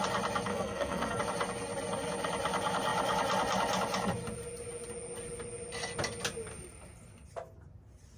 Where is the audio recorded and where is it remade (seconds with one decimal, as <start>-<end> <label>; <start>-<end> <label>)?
0.0-0.5 recorded; 0.5-1.2 remade; 1.2-8.2 recorded